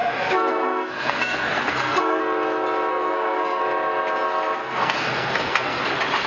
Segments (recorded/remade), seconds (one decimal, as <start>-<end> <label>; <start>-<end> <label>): 0.0-2.2 remade; 2.2-2.9 recorded; 2.9-3.6 remade; 3.6-4.6 recorded; 4.6-5.8 remade; 5.8-6.3 recorded